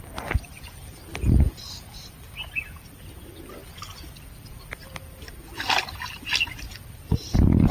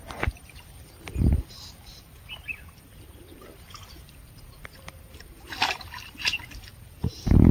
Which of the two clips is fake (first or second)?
second